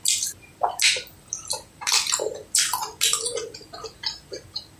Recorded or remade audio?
recorded